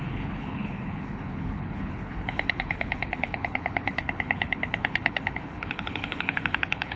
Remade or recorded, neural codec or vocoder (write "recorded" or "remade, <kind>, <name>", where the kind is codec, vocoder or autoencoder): remade, codec, HILCodec